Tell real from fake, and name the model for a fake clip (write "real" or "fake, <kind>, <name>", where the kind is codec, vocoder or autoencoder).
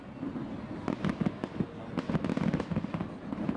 real